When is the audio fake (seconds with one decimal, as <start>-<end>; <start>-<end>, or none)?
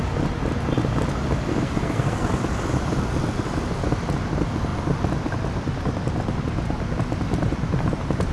1.5-2.3